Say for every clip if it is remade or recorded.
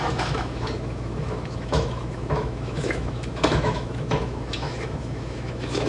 remade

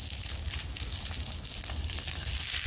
recorded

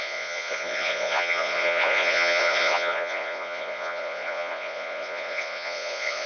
remade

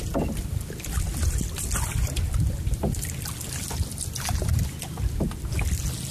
recorded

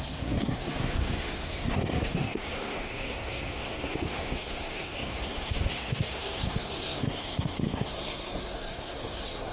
remade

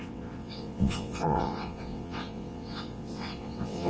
remade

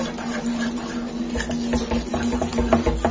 recorded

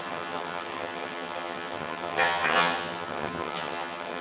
remade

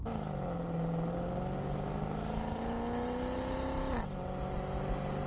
recorded